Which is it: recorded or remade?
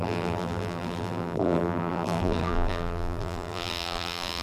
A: remade